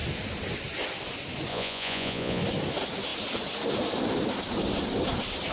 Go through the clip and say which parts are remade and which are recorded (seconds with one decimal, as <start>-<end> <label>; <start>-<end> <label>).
0.0-1.5 recorded; 1.5-2.4 remade; 2.4-5.5 recorded